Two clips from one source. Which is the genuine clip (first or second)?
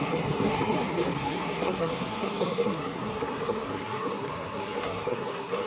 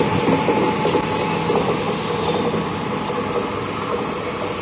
second